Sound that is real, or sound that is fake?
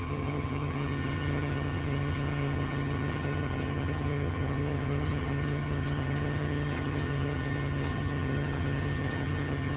fake